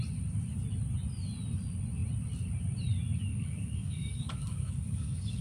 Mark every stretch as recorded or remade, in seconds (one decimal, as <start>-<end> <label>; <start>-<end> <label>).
0.0-3.3 recorded; 3.3-5.4 remade